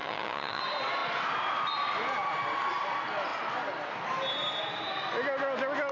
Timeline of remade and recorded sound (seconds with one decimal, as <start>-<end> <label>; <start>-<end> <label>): 0.0-0.6 remade; 0.6-5.9 recorded